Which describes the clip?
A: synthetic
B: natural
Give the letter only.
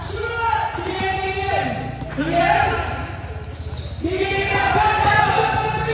B